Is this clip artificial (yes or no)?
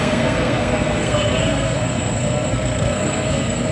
yes